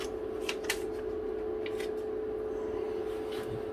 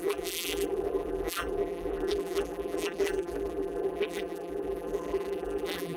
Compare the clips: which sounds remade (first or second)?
second